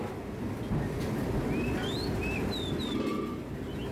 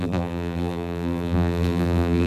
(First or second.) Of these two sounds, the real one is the first